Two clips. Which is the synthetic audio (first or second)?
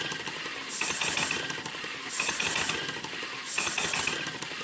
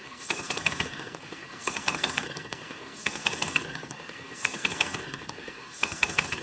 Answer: second